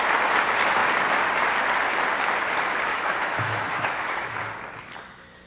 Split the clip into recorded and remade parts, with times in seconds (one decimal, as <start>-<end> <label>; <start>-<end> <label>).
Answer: 0.0-2.9 recorded; 2.9-4.4 remade; 4.4-5.5 recorded